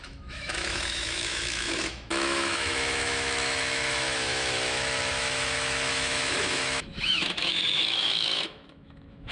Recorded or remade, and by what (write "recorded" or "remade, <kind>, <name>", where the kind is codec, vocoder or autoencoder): remade, autoencoder, DAC-VAE